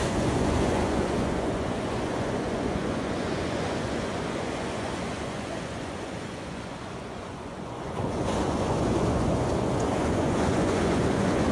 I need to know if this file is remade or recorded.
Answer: remade